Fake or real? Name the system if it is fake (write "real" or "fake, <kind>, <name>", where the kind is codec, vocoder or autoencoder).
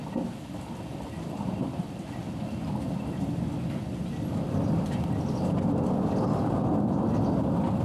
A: real